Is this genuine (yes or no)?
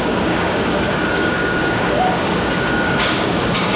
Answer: no